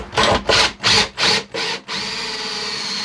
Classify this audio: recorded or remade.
recorded